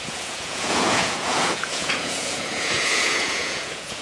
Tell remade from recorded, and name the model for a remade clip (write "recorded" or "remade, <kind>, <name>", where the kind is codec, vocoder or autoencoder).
remade, vocoder, Vocos